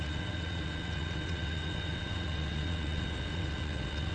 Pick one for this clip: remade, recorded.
remade